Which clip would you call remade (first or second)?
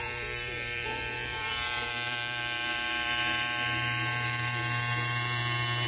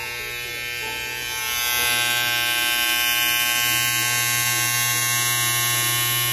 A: first